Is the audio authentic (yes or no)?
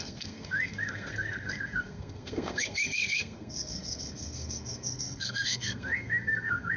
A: no